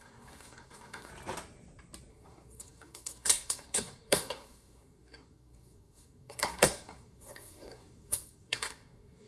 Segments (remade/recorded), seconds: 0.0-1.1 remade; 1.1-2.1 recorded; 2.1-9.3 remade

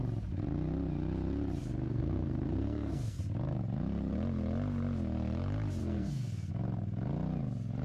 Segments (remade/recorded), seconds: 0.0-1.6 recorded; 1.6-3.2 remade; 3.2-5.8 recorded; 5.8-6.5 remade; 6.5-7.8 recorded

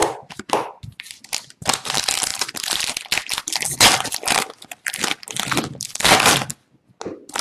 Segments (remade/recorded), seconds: 0.0-0.5 remade; 0.5-2.3 recorded; 2.3-2.8 remade; 2.8-7.4 recorded

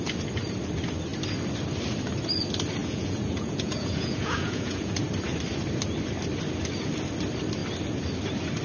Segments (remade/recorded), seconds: 0.0-2.8 recorded; 2.8-5.0 remade; 5.0-8.6 recorded